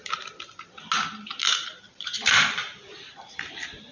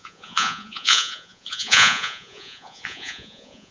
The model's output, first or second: second